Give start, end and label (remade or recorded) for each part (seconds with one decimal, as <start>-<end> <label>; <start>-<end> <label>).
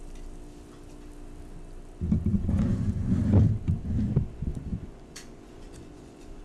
0.0-2.3 recorded; 2.3-3.2 remade; 3.2-4.7 recorded; 4.7-6.4 remade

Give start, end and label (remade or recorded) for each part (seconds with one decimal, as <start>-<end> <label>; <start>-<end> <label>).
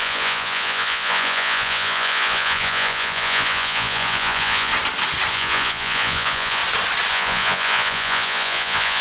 0.0-4.7 remade; 4.7-5.3 recorded; 5.3-6.6 remade; 6.6-7.1 recorded; 7.1-9.0 remade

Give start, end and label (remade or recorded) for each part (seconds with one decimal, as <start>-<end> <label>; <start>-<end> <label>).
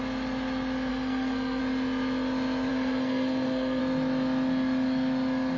0.0-0.9 recorded; 0.9-1.6 remade; 1.6-2.7 recorded; 2.7-3.8 remade; 3.8-5.6 recorded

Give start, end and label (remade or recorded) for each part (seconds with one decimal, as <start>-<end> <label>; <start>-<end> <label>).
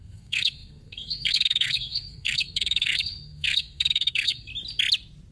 0.0-4.5 remade; 4.5-5.3 recorded